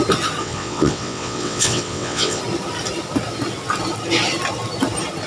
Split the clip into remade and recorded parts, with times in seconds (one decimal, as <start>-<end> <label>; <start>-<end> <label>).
0.0-0.4 recorded; 0.4-2.4 remade; 2.4-5.3 recorded